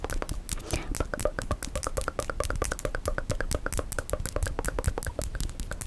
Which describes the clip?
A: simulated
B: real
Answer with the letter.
B